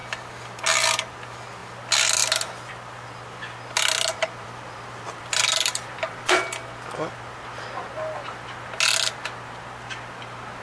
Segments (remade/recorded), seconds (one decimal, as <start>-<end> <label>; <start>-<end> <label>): 0.0-4.1 recorded; 4.1-6.3 remade; 6.3-10.6 recorded

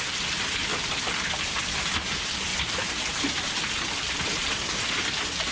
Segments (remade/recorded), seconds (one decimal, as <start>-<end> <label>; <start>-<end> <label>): 0.0-0.7 recorded; 0.7-2.1 remade; 2.1-2.5 recorded; 2.5-3.6 remade; 3.6-5.5 recorded

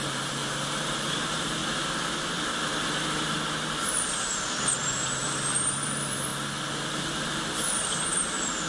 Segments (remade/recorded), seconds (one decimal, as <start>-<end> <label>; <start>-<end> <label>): 0.0-1.6 remade; 1.6-4.8 recorded; 4.8-6.3 remade; 6.3-6.9 recorded; 6.9-8.7 remade

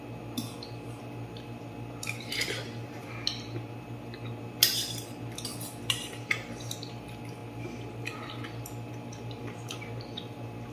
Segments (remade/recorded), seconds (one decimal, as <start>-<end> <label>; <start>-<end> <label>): 0.0-10.7 recorded

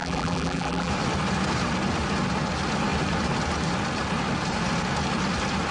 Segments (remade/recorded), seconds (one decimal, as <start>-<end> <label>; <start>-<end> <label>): 0.0-0.9 remade; 0.9-5.7 recorded

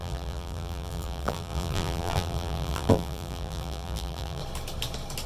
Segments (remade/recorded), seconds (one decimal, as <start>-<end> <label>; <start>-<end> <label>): 0.0-4.4 remade; 4.4-5.3 recorded

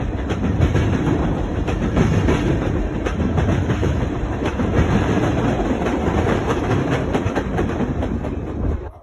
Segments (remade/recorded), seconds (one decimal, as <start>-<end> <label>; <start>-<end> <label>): 0.0-9.0 remade

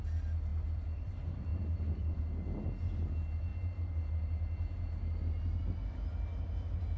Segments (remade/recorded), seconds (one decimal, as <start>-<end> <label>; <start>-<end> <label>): 0.0-0.5 recorded; 0.5-1.1 remade; 1.1-1.5 recorded; 1.5-2.2 remade; 2.2-7.0 recorded